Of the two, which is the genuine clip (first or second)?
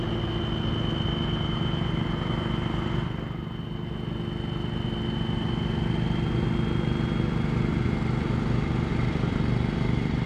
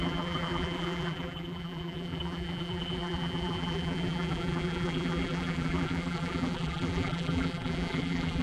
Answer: first